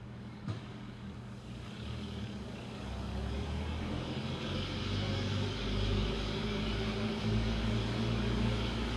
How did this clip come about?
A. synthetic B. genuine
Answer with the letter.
A